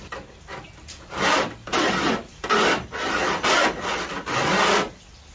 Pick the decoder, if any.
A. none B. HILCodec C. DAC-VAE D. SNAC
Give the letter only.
A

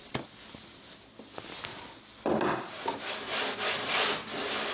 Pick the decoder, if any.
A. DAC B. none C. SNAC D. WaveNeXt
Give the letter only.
B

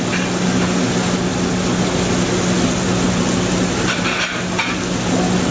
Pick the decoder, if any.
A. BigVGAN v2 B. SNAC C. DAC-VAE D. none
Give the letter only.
D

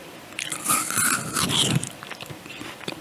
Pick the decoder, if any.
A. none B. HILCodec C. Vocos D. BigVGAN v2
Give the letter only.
D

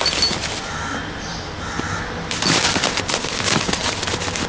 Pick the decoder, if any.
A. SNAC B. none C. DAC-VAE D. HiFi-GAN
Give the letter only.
B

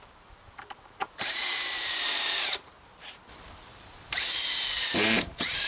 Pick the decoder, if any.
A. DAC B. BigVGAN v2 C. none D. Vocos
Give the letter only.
B